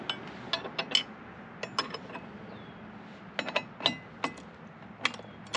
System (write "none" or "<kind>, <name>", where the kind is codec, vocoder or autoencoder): none